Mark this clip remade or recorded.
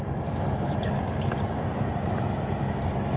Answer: recorded